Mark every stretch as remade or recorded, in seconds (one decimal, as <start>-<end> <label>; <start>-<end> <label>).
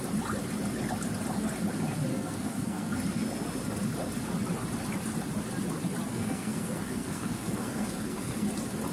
0.0-2.1 recorded; 2.1-2.9 remade; 2.9-6.1 recorded; 6.1-8.5 remade; 8.5-8.9 recorded